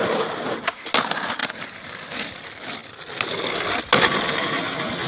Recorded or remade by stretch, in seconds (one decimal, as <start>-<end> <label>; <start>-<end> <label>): 0.0-1.4 recorded; 1.4-2.3 remade; 2.3-5.1 recorded